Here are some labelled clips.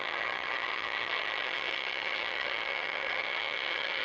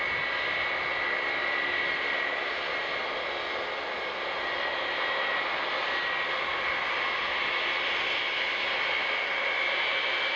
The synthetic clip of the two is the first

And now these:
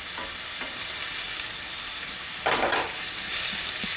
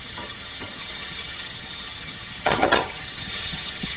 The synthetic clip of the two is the second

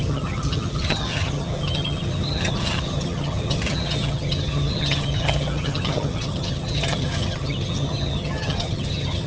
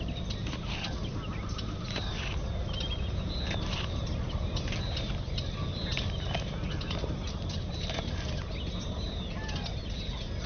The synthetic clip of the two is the first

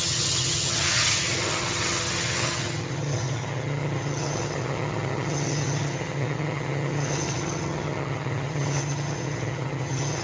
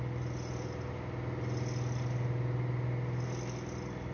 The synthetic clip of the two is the first